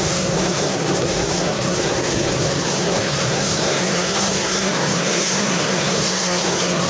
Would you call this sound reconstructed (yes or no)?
yes